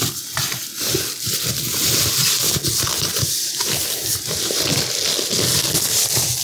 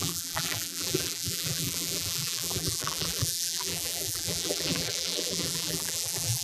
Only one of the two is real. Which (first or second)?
first